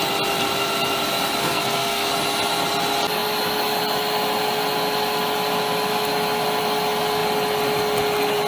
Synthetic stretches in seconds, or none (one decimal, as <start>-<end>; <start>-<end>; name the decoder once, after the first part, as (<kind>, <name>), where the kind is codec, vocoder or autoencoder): 1.4-2.1 (codec, SNAC)